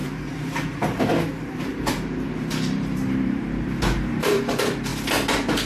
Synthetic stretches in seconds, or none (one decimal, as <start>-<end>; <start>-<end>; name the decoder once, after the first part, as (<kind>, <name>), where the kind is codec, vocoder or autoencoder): 0.0-1.0 (vocoder, BigVGAN v2); 1.7-4.5

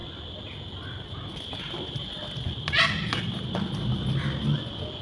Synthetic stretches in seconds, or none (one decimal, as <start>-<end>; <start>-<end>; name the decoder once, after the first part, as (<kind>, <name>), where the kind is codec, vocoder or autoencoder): none